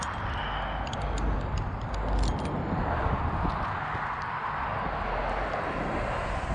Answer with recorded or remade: recorded